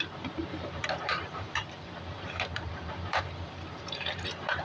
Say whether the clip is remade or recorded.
remade